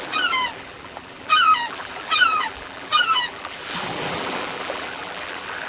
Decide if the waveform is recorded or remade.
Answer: remade